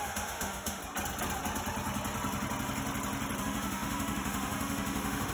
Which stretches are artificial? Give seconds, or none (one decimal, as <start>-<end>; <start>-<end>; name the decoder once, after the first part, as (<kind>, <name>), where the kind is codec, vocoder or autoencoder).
0.0-0.8 (autoencoder, DAC-VAE); 3.4-5.3

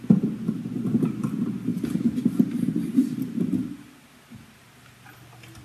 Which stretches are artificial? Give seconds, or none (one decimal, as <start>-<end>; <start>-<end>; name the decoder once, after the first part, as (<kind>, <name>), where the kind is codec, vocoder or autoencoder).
none

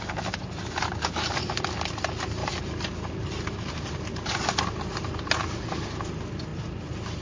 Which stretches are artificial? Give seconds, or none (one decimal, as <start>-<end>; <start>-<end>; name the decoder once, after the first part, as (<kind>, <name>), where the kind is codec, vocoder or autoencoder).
2.4-4.3 (vocoder, BigVGAN v2)

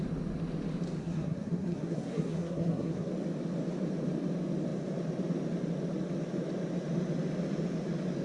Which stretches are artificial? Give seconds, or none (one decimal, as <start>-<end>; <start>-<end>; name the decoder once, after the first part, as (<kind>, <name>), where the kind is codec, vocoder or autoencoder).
1.0-3.1 (codec, SNAC)

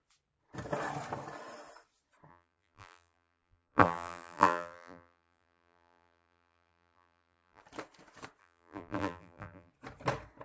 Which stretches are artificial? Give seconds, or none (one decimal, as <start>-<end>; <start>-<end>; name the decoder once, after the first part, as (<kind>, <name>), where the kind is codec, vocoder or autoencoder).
2.3-7.6 (vocoder, BigVGAN v2); 8.4-9.7

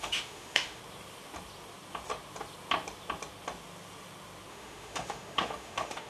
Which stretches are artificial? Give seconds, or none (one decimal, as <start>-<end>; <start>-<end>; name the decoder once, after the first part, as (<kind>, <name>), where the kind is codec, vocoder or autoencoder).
0.0-0.8 (autoencoder, DAC-VAE); 4.5-6.1

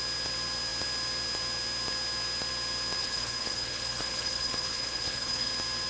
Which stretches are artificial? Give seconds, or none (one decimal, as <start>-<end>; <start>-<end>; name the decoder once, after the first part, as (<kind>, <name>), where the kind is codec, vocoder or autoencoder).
3.0-5.5 (codec, HILCodec)

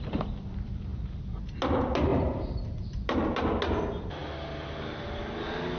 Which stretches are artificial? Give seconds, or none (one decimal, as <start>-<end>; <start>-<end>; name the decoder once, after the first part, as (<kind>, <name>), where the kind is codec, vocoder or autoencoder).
0.9-1.6 (vocoder, BigVGAN v2); 2.1-3.5